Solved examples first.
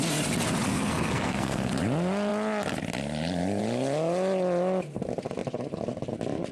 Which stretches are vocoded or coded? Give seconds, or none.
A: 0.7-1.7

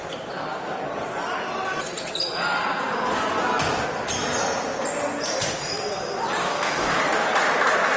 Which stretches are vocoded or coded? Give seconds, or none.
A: 6.4-7.0

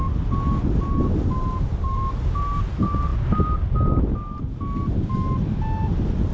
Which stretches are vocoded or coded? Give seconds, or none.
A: none

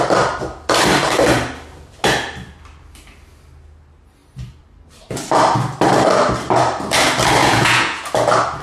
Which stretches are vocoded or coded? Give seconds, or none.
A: 7.4-8.1

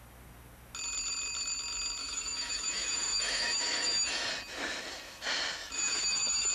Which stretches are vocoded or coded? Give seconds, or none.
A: 2.0-4.3; 5.6-6.5

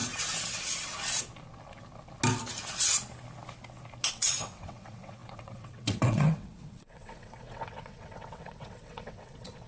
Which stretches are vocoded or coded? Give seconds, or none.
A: 4.1-9.7